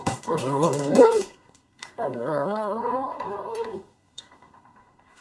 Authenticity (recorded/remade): remade